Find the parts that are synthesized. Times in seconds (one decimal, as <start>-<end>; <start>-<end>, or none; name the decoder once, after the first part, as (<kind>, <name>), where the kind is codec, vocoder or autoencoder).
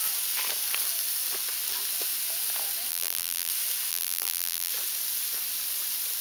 2.9-3.5 (vocoder, BigVGAN v2); 3.9-4.7